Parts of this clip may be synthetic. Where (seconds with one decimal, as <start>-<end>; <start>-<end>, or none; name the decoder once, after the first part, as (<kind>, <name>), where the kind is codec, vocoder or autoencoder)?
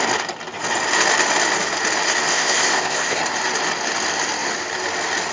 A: 2.3-3.2 (codec, ZipCodec)